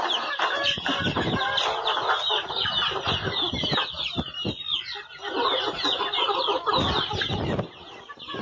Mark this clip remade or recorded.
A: recorded